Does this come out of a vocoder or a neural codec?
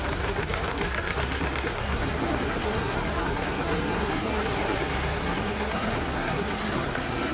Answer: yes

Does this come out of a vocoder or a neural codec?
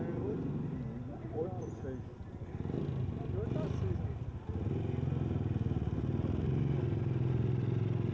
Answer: no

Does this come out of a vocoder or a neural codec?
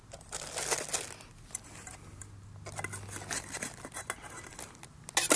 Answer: no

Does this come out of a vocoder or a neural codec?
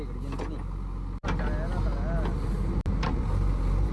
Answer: no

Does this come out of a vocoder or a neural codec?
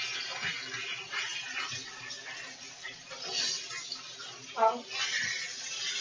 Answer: no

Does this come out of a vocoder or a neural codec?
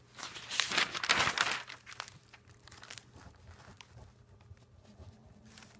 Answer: no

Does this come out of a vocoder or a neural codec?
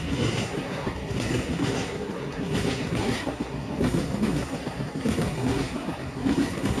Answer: yes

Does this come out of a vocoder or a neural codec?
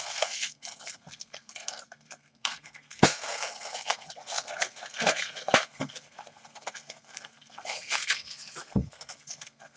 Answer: yes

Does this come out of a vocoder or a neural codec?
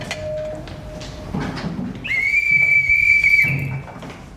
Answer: no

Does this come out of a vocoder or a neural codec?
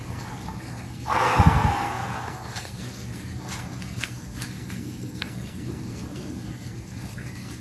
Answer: yes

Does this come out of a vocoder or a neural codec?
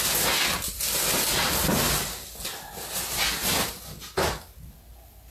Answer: no